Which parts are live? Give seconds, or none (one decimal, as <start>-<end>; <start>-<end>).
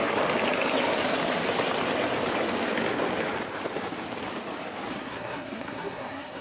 0.0-4.9